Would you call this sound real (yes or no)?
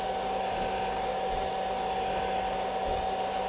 yes